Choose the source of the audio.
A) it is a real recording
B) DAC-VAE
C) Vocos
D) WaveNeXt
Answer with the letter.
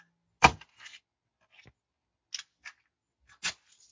A